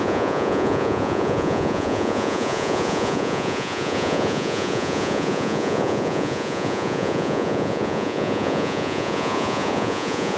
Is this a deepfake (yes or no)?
yes